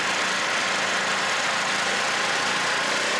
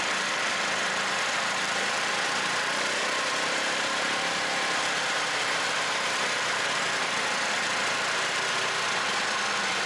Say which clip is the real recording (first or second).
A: first